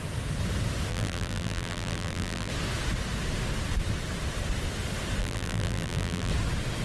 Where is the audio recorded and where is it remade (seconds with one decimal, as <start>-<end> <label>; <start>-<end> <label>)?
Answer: 0.0-0.9 recorded; 0.9-2.5 remade; 2.5-5.2 recorded; 5.2-6.3 remade; 6.3-6.8 recorded